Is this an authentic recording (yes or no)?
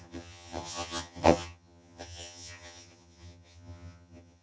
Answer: no